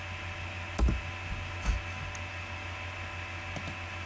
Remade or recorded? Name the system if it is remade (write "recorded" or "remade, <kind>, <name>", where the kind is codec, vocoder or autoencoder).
recorded